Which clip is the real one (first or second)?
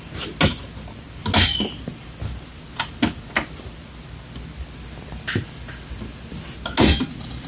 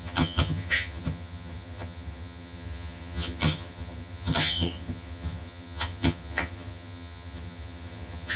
first